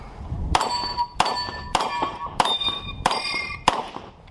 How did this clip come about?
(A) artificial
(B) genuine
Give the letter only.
A